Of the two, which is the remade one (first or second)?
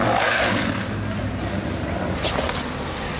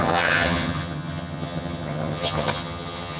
second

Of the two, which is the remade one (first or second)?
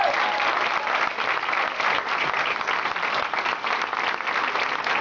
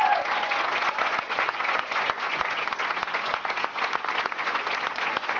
second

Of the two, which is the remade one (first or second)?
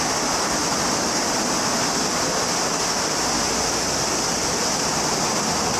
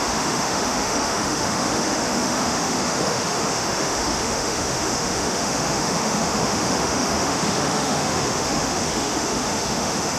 second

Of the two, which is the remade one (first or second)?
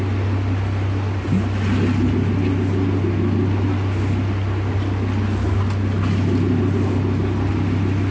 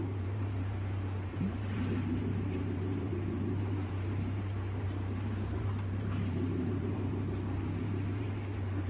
second